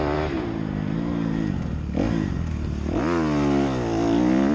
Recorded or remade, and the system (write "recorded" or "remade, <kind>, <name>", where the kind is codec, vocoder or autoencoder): recorded